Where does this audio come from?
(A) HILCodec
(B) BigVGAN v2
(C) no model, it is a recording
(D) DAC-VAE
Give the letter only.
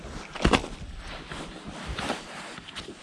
C